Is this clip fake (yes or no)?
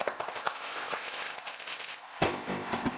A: yes